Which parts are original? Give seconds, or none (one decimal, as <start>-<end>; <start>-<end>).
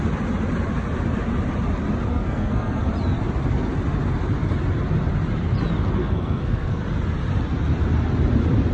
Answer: 0.0-2.1; 2.9-6.0; 6.8-8.7